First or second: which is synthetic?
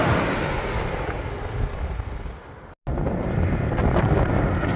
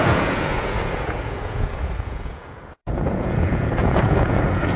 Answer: second